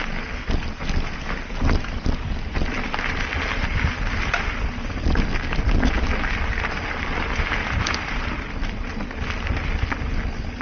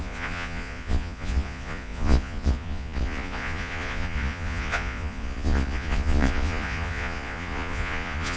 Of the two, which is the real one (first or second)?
first